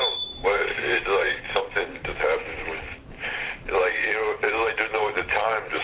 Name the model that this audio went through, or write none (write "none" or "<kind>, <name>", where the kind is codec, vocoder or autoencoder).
vocoder, BigVGAN v2